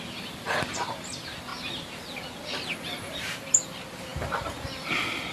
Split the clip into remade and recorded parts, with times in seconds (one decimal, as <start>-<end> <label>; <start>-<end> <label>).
0.0-4.1 recorded; 4.1-5.3 remade